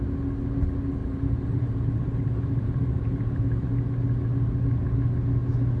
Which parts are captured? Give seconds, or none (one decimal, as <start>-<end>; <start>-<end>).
0.0-1.0; 3.7-5.8